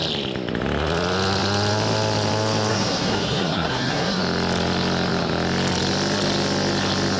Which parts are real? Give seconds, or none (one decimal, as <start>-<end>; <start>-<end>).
0.0-2.7; 4.2-7.2